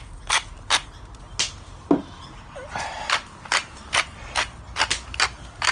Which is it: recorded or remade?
recorded